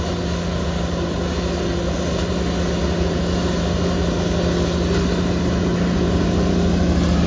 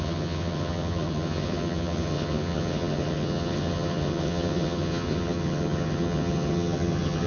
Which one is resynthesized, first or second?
second